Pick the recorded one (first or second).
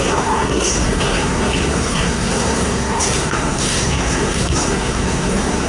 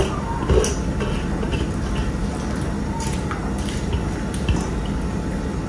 second